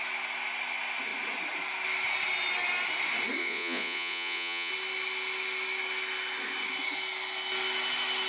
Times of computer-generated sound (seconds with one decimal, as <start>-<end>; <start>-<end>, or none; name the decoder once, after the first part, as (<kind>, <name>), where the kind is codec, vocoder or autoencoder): 3.4-4.7 (vocoder, Vocos)